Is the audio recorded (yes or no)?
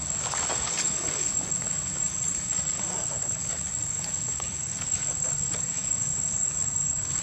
no